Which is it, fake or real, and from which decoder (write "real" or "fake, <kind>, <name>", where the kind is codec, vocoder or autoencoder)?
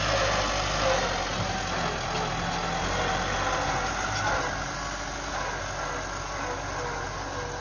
real